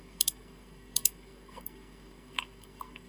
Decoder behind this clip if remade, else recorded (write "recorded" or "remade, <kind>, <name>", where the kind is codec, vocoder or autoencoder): remade, codec, SNAC